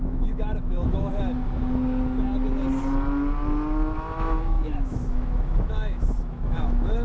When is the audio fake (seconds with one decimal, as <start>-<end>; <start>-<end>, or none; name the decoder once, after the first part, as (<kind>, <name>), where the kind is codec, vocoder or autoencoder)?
0.0-1.1 (autoencoder, DAC-VAE); 4.0-7.0